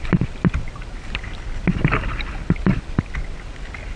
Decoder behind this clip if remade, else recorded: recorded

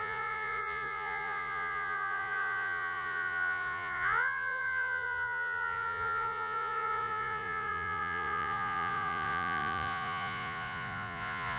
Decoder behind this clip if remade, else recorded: remade, vocoder, Vocos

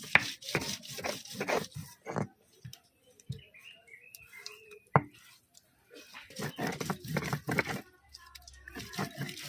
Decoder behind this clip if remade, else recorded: recorded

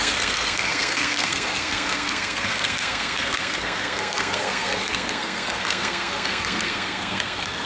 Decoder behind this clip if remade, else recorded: remade, codec, SNAC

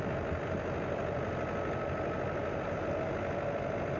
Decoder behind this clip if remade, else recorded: recorded